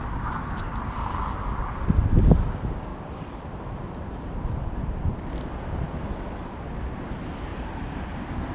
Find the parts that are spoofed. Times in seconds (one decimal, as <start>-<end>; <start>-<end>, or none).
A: 2.9-5.9; 7.5-8.1